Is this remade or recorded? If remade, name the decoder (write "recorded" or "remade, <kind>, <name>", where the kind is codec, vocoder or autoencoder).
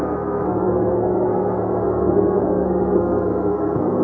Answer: remade, codec, SNAC